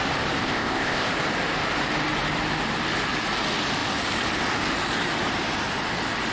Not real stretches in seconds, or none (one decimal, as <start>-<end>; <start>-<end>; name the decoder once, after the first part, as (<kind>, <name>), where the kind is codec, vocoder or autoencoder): 0.4-1.1 (codec, ZipCodec)